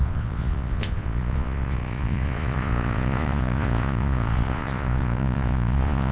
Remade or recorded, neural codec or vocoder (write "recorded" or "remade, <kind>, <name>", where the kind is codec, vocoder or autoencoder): remade, vocoder, Vocos